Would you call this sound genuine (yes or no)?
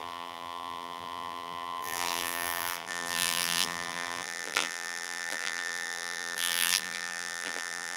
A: no